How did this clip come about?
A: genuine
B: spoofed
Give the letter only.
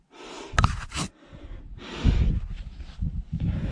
A